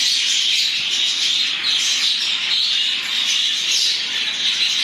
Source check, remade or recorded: recorded